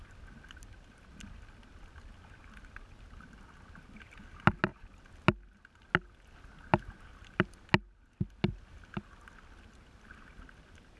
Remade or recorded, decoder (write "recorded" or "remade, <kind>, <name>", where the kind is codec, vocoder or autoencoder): recorded